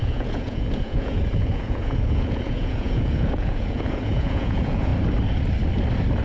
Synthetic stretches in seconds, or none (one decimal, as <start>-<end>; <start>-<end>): 0.0-4.9